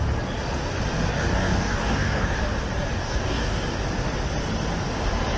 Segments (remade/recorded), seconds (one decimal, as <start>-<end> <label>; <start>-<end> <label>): 0.0-1.1 recorded; 1.1-2.4 remade; 2.4-3.0 recorded; 3.0-3.5 remade; 3.5-5.4 recorded